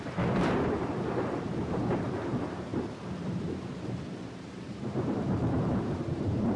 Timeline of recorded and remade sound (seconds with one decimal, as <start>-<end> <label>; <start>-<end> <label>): 0.0-2.7 remade; 2.7-3.2 recorded; 3.2-6.6 remade